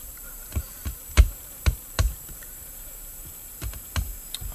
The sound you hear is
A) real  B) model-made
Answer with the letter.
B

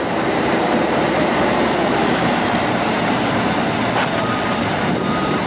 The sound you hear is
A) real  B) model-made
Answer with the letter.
B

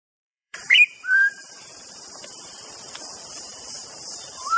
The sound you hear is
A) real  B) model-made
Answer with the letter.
B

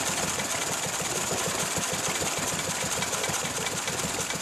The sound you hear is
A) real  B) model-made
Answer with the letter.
B